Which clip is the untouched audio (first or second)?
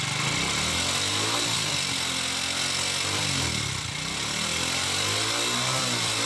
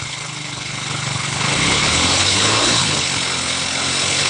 first